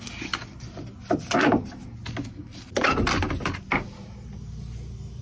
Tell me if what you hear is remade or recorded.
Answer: recorded